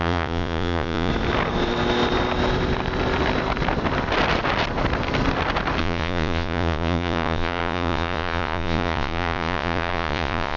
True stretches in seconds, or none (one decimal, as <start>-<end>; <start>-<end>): 1.1-5.8